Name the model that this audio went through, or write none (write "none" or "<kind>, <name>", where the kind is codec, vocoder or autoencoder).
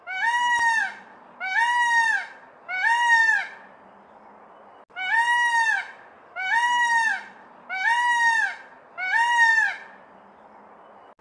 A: none